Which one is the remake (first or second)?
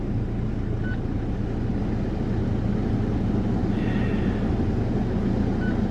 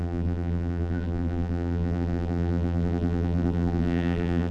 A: second